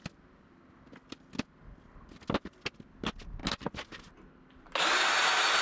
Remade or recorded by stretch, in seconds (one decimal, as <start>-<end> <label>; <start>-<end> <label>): 0.0-5.6 recorded

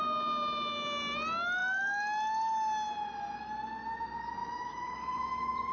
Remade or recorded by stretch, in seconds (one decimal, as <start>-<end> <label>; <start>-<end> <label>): 0.0-4.4 recorded; 4.4-5.7 remade

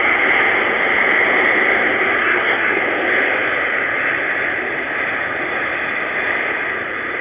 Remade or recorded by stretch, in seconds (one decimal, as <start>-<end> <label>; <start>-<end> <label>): 0.0-2.2 recorded; 2.2-2.8 remade; 2.8-7.2 recorded

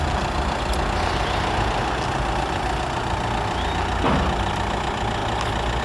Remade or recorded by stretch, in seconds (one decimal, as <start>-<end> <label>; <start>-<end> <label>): 0.0-5.8 recorded

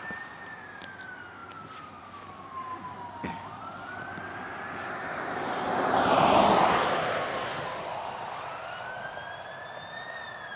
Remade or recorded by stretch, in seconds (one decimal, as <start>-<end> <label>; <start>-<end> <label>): 0.0-10.6 recorded